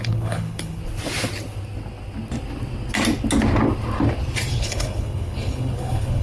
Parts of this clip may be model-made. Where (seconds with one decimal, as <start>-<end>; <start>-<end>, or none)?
0.0-0.8; 4.5-6.2